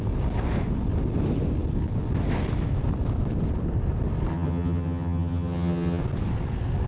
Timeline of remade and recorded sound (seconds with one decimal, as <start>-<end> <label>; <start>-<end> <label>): 0.0-4.3 recorded; 4.3-6.0 remade; 6.0-6.9 recorded